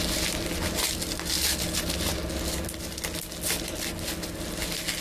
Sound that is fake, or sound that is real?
real